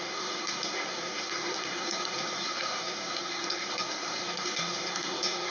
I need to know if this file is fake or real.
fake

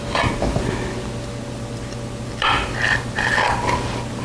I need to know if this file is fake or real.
real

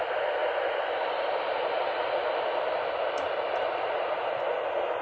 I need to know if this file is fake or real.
real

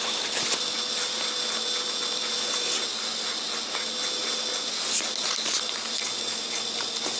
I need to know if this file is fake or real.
real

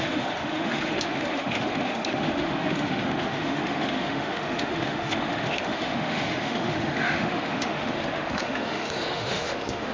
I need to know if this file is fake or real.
fake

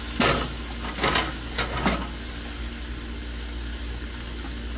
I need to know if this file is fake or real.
real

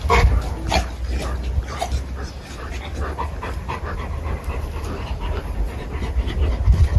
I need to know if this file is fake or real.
real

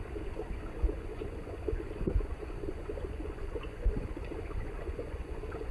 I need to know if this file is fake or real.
fake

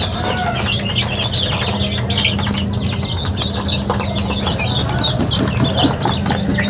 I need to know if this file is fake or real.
real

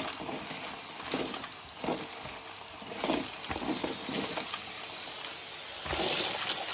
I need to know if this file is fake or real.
real